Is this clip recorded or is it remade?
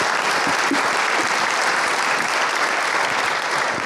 recorded